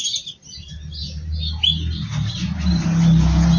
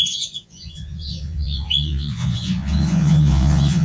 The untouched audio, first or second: first